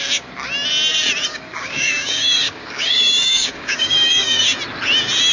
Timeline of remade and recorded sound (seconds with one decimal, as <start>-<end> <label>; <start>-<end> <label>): 0.0-1.3 recorded; 1.3-4.4 remade; 4.4-5.3 recorded